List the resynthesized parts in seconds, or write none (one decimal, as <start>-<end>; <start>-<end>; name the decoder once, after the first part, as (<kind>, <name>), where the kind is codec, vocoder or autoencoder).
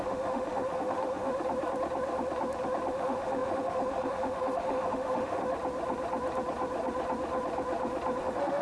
0.0-1.3 (autoencoder, DAC-VAE); 2.9-5.4; 8.2-8.6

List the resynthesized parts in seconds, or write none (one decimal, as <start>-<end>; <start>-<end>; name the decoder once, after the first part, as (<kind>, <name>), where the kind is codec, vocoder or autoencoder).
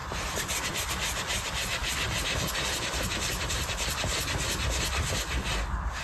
none